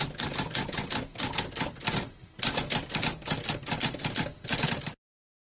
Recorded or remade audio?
recorded